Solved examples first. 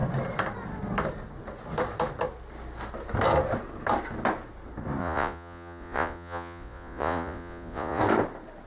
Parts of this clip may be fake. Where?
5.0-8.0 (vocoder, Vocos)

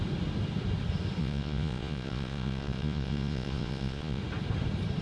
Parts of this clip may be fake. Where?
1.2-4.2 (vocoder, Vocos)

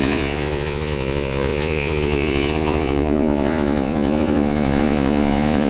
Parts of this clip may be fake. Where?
0.0-5.7 (vocoder, Vocos)

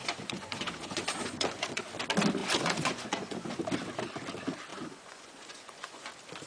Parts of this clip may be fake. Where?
0.0-1.8 (vocoder, Vocos); 2.4-3.6; 4.7-6.1

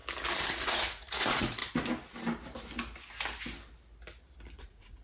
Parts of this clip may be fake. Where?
0.5-1.6 (vocoder, Vocos); 4.6-5.0

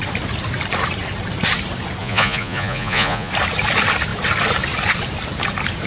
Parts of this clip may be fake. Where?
2.0-3.3 (vocoder, Vocos)

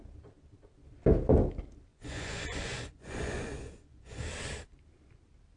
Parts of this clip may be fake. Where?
1.9-4.2 (vocoder, Vocos)